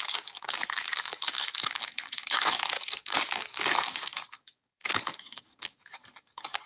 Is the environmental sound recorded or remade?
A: remade